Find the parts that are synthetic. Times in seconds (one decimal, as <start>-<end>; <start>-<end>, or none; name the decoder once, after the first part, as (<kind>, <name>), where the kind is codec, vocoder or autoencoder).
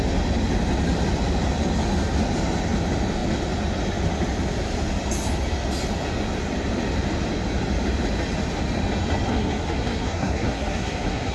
9.3-11.3 (codec, SNAC)